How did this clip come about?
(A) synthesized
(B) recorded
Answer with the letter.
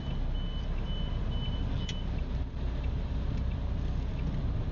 B